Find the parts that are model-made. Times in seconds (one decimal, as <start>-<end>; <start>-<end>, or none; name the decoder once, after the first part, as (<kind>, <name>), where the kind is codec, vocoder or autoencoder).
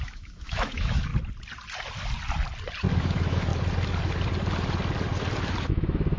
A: 0.0-1.1 (autoencoder, DAC-VAE); 3.0-3.5; 5.6-6.2